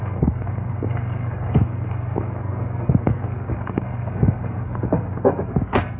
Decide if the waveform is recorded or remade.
remade